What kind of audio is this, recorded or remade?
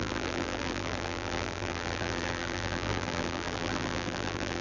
remade